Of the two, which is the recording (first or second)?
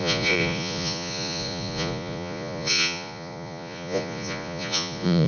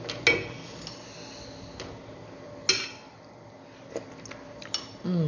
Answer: second